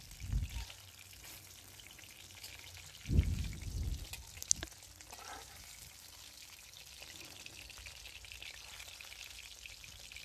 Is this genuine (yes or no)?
yes